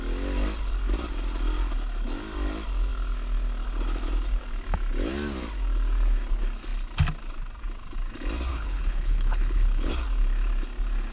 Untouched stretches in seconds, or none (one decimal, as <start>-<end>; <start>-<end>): 0.0-8.5; 9.9-11.1